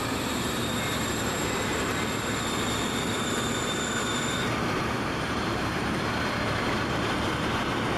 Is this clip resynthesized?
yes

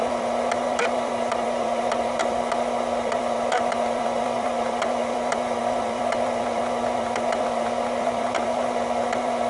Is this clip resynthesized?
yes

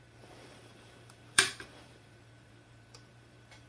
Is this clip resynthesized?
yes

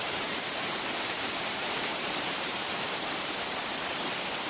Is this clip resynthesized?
yes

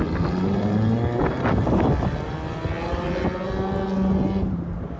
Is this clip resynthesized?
no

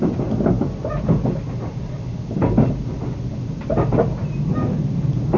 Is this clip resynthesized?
no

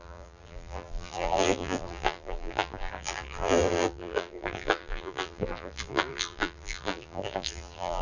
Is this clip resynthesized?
yes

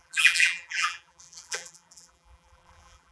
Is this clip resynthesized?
yes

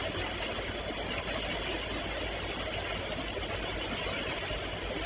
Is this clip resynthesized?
no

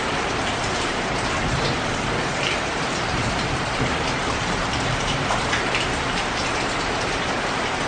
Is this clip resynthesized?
yes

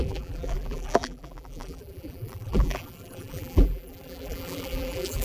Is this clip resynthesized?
yes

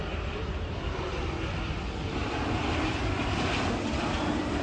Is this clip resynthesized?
yes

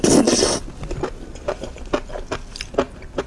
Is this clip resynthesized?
no